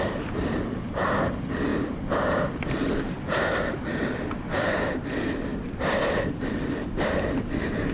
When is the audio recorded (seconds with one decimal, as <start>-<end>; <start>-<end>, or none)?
0.0-1.7; 5.0-5.5; 7.2-7.9